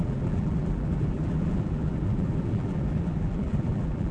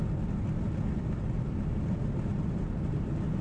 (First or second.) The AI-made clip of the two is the first